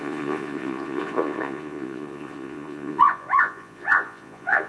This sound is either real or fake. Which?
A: fake